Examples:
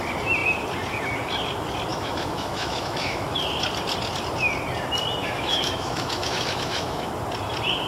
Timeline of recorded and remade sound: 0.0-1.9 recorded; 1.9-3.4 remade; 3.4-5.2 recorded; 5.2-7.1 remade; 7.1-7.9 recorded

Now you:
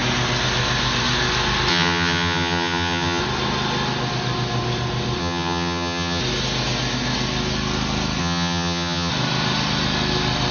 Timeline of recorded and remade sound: 0.0-1.7 recorded; 1.7-3.2 remade; 3.2-5.2 recorded; 5.2-6.2 remade; 6.2-8.2 recorded; 8.2-9.1 remade; 9.1-10.5 recorded

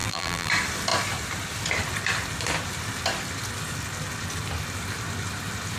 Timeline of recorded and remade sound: 0.0-0.5 remade; 0.5-5.8 recorded